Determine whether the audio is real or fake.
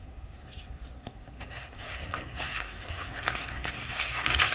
fake